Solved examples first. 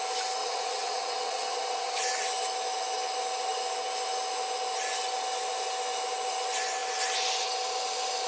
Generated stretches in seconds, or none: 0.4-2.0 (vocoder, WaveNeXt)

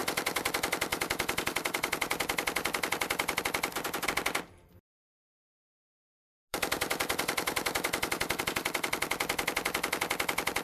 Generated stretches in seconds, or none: 0.9-3.4 (vocoder, BigVGAN v2); 6.5-8.4